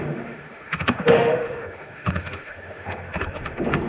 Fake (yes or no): yes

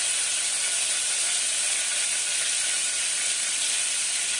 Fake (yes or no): no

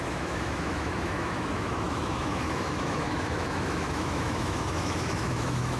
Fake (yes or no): yes